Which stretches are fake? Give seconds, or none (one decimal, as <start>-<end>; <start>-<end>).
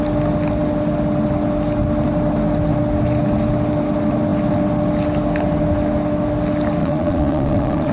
6.8-7.9